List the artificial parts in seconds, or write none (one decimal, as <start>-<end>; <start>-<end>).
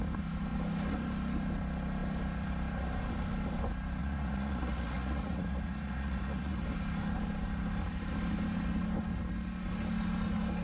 4.0-6.6